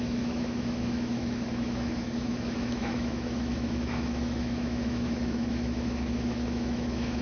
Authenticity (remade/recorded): remade